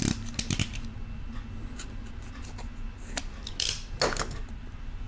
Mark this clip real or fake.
real